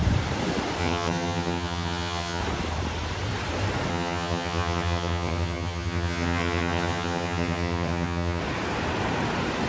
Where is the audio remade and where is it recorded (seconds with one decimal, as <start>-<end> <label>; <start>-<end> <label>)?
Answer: 0.0-0.8 recorded; 0.8-2.4 remade; 2.4-3.9 recorded; 3.9-8.4 remade; 8.4-9.7 recorded